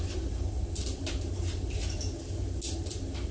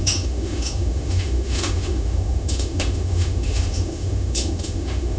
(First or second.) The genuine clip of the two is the first